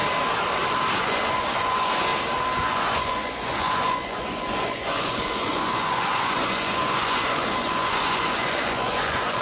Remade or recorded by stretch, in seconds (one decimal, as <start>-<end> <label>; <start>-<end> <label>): 0.0-1.0 recorded; 1.0-2.1 remade; 2.1-2.7 recorded; 2.7-9.4 remade